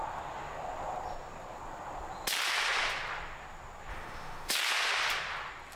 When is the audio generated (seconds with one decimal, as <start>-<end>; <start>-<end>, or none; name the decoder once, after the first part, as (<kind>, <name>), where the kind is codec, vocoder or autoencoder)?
3.9-4.5 (autoencoder, DAC-VAE)

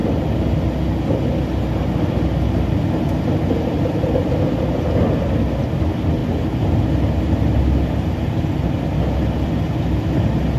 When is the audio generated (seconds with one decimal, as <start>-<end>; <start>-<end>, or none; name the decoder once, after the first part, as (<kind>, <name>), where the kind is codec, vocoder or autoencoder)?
none

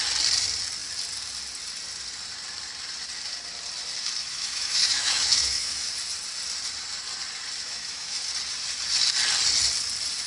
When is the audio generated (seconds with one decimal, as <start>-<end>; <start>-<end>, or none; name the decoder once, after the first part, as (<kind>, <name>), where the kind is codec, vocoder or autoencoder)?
4.2-5.9 (autoencoder, DAC-VAE); 7.6-8.2

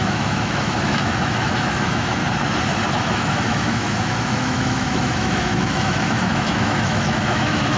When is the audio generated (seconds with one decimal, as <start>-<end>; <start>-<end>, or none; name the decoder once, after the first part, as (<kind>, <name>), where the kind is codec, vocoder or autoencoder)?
0.0-2.2 (autoencoder, DAC-VAE); 2.9-7.8

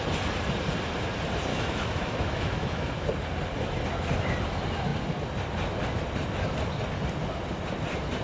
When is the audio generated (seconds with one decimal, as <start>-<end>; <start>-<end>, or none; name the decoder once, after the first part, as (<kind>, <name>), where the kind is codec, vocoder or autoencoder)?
1.5-3.1 (autoencoder, DAC-VAE)

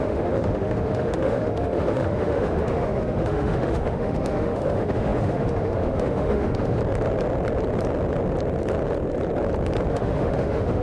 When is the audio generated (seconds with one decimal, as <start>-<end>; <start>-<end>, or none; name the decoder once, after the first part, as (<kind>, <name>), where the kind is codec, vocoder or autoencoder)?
0.0-6.8 (autoencoder, DAC-VAE); 9.9-10.8

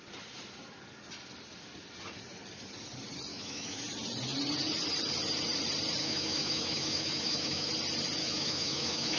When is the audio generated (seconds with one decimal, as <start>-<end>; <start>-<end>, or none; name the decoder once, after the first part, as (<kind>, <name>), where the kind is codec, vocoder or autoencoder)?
3.3-3.8 (autoencoder, DAC-VAE); 6.0-7.7; 8.2-9.2

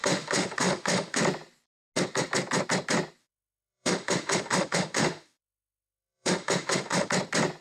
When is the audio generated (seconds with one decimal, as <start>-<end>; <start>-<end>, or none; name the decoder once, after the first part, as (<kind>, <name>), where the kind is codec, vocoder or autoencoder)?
0.0-1.2 (autoencoder, DAC-VAE); 3.2-7.1